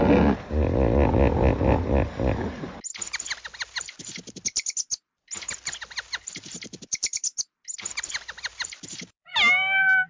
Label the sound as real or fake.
real